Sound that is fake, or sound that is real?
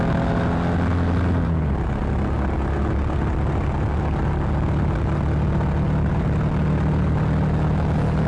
real